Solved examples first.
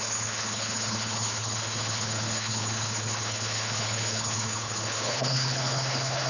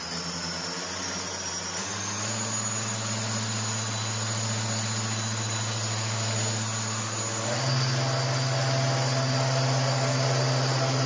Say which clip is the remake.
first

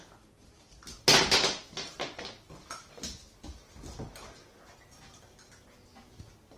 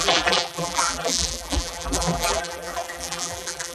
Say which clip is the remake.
second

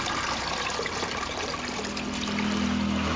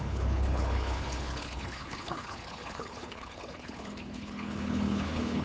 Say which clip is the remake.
second